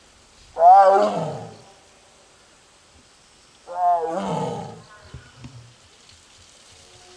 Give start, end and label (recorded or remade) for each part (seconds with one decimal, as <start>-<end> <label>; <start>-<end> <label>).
0.0-7.2 recorded